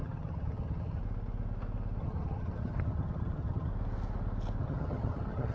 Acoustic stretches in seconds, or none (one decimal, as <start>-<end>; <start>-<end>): 1.0-2.0; 3.7-4.6